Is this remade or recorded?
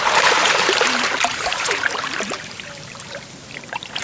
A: remade